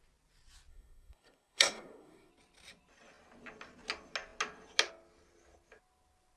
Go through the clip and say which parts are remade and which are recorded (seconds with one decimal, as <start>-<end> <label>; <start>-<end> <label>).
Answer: 0.0-0.7 recorded; 0.7-2.3 remade; 2.3-6.4 recorded